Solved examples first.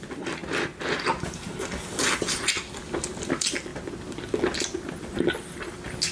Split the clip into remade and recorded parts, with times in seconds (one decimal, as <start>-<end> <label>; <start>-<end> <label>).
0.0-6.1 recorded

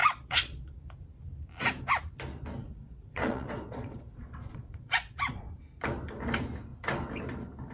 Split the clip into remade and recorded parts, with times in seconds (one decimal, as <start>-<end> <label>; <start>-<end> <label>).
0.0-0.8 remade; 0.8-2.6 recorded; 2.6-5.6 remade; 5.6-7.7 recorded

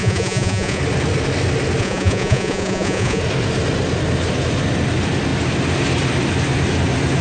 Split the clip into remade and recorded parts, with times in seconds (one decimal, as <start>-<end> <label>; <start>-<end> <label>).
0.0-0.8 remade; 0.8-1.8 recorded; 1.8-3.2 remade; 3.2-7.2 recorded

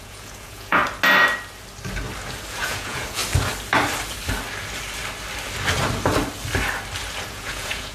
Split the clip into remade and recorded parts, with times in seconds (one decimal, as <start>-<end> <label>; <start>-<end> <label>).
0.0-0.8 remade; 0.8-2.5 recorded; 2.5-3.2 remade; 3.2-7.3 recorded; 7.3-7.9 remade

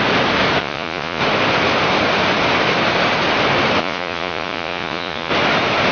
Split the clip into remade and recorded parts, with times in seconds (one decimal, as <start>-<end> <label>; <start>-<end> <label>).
0.0-0.6 recorded; 0.6-1.2 remade; 1.2-3.8 recorded; 3.8-5.3 remade; 5.3-5.9 recorded

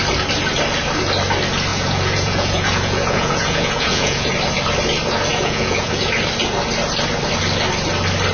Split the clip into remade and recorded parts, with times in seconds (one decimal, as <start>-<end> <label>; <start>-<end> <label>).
0.0-1.7 recorded; 1.7-4.3 remade; 4.3-5.3 recorded; 5.3-6.1 remade; 6.1-8.3 recorded